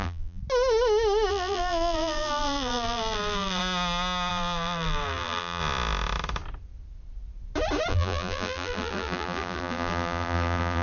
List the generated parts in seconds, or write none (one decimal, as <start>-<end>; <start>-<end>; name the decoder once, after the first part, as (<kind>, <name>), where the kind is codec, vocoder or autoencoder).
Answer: 0.0-0.4 (vocoder, BigVGAN v2); 1.3-3.6; 4.3-5.6; 7.9-10.8